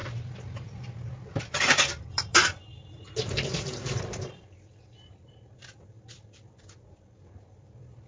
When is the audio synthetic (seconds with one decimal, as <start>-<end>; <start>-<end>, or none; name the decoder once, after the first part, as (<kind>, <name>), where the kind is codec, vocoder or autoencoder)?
0.0-8.1 (vocoder, BigVGAN v2)